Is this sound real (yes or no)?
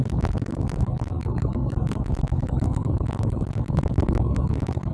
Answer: no